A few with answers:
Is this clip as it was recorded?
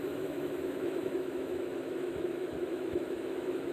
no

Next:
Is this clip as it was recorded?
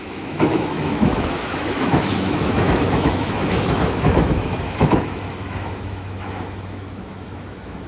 no